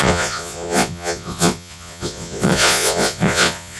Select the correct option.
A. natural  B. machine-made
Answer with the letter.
B